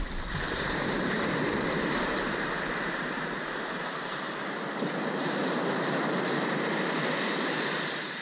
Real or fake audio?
fake